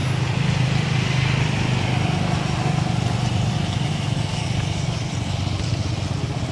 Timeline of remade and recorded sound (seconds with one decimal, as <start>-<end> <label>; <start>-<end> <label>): 0.0-4.3 recorded; 4.3-5.1 remade; 5.1-6.5 recorded